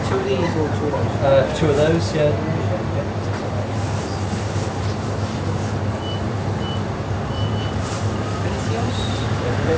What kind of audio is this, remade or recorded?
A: recorded